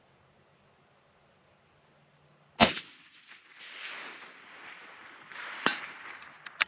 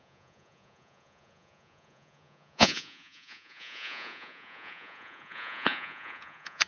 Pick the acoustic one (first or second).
first